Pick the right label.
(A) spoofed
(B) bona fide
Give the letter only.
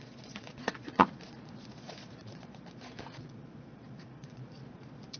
A